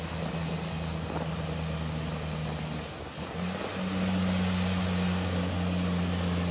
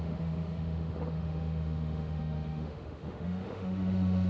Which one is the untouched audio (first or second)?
first